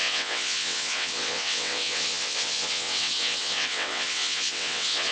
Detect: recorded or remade remade